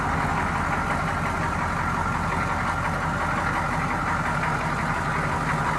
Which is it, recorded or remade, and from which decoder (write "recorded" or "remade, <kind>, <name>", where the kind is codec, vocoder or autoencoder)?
recorded